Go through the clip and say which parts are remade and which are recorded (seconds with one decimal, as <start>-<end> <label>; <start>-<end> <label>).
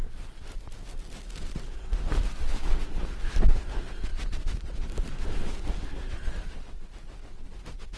0.0-8.0 recorded